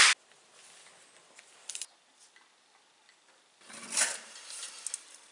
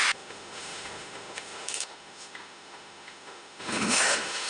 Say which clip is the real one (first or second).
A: first